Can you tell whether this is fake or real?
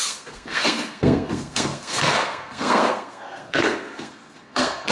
fake